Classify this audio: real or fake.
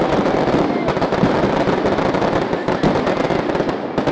real